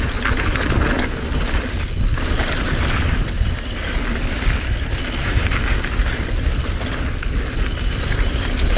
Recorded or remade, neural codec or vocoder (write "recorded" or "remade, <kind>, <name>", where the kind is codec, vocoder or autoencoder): recorded